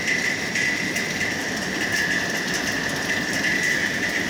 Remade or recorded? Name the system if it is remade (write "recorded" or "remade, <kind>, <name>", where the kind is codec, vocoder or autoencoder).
recorded